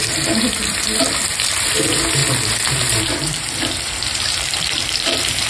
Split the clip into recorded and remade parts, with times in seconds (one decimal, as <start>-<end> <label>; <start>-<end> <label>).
0.0-5.5 remade